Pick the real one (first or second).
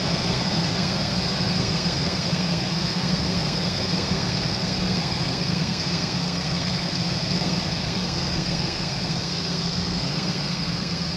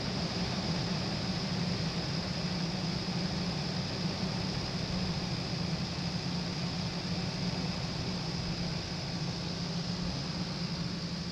second